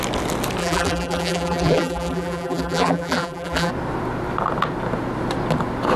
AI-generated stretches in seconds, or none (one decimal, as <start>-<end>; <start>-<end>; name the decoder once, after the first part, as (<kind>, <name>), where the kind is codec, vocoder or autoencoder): 0.6-3.7 (vocoder, BigVGAN v2)